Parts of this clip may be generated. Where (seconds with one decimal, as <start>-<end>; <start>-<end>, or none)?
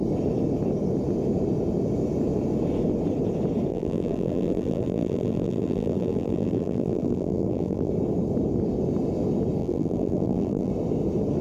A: 3.7-7.9; 9.6-10.7